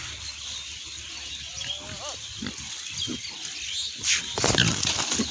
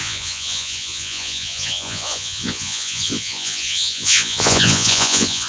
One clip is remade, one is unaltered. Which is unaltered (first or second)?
first